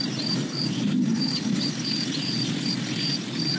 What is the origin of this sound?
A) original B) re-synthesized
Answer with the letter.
A